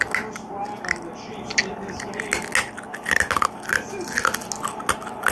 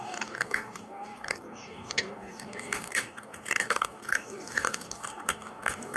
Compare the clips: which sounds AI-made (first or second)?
second